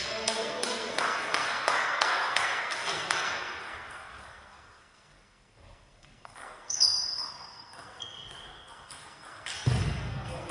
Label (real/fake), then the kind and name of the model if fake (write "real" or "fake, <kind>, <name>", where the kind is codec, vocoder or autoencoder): fake, codec, SNAC